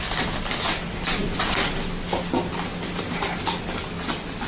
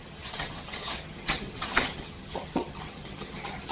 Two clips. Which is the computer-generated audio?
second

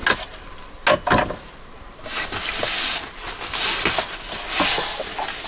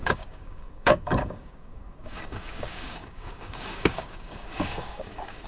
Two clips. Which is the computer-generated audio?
second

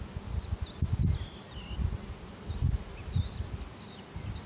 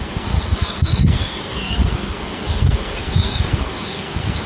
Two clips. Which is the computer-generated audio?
second